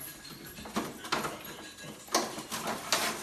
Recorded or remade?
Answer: recorded